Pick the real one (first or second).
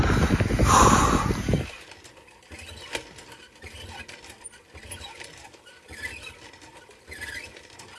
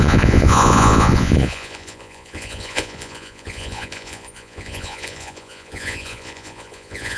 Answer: first